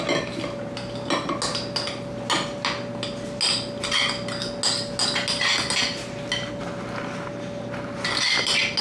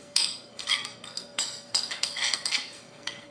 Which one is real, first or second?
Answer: first